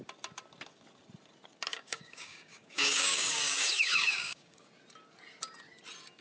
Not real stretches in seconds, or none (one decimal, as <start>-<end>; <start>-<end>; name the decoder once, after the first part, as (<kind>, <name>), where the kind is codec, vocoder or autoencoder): 1.7-4.7 (codec, DAC)